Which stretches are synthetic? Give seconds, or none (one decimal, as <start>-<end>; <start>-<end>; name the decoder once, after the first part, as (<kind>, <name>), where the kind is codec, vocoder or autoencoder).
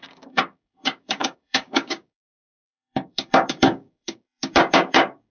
0.0-5.3 (codec, DAC)